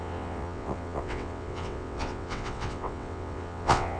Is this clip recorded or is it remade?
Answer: remade